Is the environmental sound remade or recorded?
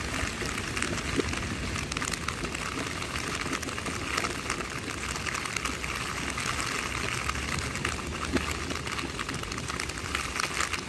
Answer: recorded